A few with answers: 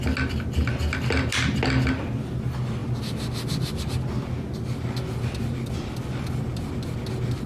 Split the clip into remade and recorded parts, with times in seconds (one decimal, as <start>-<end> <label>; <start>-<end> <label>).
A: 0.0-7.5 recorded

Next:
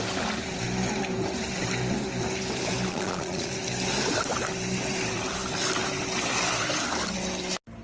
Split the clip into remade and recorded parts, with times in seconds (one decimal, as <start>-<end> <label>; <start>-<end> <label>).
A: 0.0-2.9 recorded; 2.9-3.5 remade; 3.5-7.8 recorded

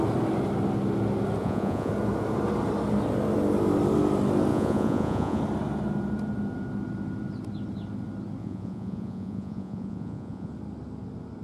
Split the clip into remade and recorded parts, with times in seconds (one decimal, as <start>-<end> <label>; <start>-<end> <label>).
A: 0.0-1.4 recorded; 1.4-1.9 remade; 1.9-4.5 recorded; 4.5-5.4 remade; 5.4-8.4 recorded; 8.4-10.5 remade; 10.5-11.4 recorded

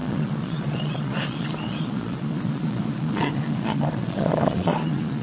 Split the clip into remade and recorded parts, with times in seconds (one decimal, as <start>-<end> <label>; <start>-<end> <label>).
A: 0.0-5.2 remade

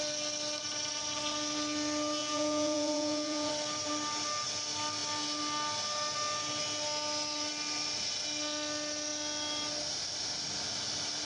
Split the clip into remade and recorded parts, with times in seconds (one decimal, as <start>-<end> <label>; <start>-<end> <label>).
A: 0.0-2.2 recorded; 2.2-3.5 remade; 3.5-11.2 recorded

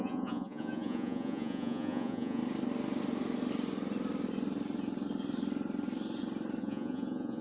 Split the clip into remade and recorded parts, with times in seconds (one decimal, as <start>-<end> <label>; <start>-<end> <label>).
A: 0.0-2.4 remade; 2.4-6.6 recorded; 6.6-7.4 remade

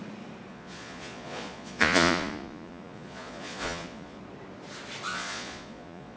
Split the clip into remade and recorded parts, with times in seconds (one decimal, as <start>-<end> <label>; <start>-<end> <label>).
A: 0.0-0.5 recorded; 0.5-4.2 remade; 4.2-5.1 recorded; 5.1-6.2 remade

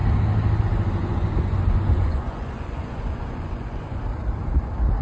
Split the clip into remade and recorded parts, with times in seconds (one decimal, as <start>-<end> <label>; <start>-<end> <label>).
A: 0.0-1.0 recorded; 1.0-4.0 remade; 4.0-5.0 recorded